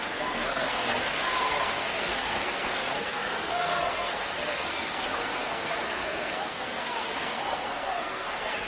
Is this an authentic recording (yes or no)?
no